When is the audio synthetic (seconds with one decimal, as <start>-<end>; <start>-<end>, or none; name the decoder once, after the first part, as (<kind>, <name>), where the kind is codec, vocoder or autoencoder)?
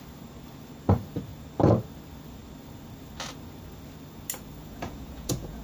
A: 4.6-5.6 (vocoder, Vocos)